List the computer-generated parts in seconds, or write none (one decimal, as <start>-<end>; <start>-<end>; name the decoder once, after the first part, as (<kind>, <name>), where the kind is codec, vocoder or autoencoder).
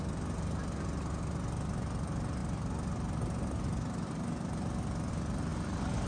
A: none